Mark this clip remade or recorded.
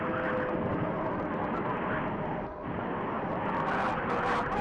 recorded